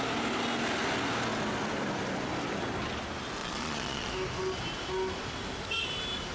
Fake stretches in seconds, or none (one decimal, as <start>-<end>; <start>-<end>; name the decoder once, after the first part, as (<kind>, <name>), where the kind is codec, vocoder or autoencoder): 3.4-4.1 (vocoder, Vocos)